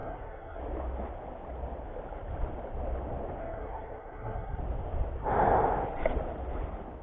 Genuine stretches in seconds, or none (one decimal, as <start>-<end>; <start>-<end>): 0.6-3.4; 4.6-7.0